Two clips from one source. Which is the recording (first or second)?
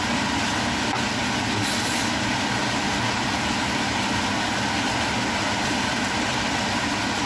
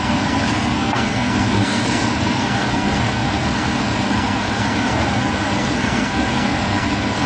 first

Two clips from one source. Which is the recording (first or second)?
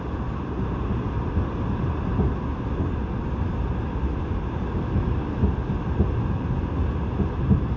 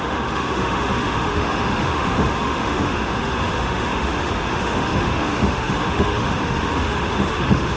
first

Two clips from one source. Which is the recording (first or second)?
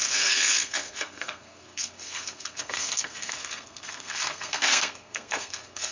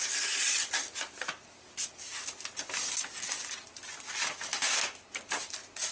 second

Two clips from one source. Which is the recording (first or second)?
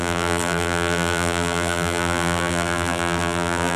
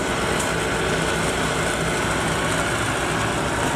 second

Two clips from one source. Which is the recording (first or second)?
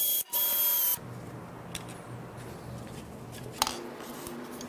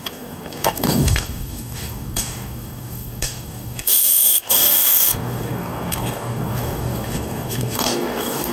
first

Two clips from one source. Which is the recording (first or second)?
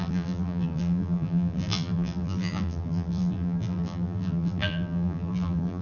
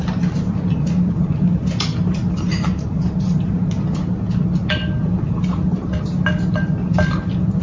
second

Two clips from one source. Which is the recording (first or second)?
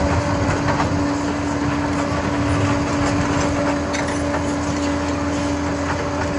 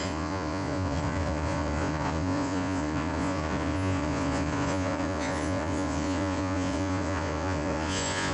first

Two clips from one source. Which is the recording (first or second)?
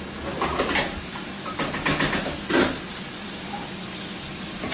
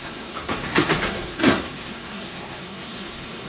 first